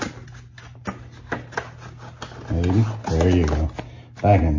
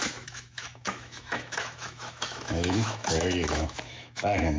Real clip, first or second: first